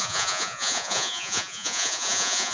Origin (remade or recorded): remade